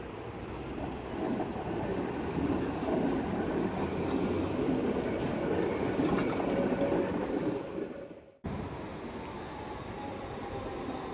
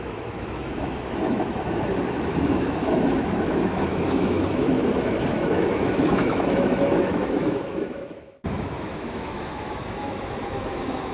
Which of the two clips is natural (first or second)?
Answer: first